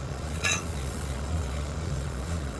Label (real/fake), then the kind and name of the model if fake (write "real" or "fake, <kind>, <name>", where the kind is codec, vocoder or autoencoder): fake, vocoder, Vocos